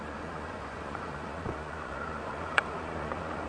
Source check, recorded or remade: remade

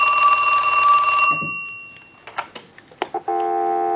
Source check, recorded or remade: recorded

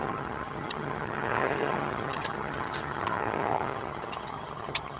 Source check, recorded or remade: remade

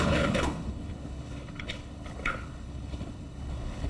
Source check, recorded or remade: remade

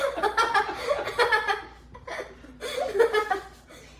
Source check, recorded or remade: recorded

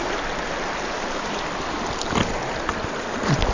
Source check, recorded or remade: recorded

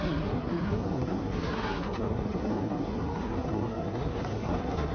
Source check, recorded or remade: remade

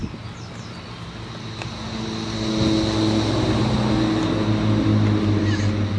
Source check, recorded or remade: recorded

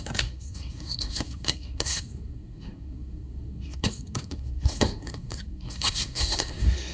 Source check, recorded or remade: remade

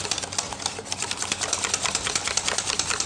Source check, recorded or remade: recorded